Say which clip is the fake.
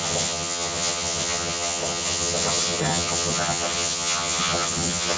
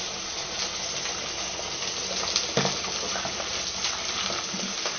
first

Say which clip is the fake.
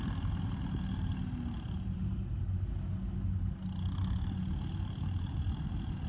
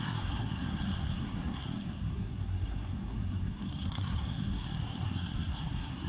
second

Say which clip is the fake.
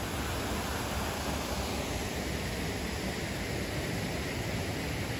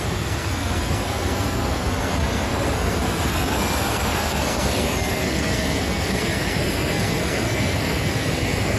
second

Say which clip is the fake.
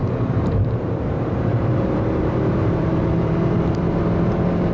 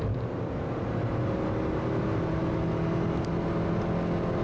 first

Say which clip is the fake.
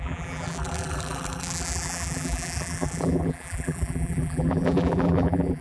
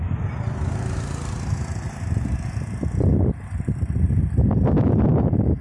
first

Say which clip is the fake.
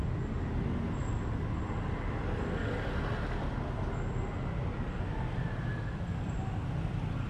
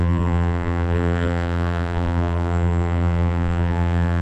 second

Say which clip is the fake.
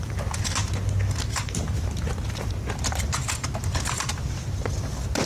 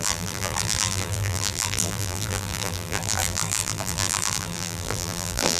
second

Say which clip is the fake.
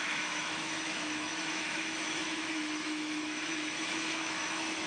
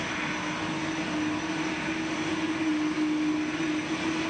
first